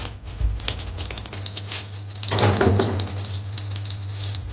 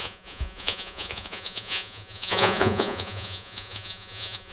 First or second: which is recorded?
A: first